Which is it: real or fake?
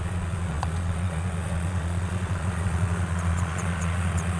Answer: fake